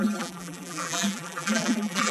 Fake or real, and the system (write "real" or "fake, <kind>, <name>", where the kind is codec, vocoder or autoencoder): fake, vocoder, BigVGAN v2